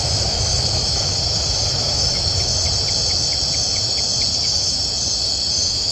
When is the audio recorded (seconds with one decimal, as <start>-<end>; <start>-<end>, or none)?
2.5-4.3; 4.8-5.5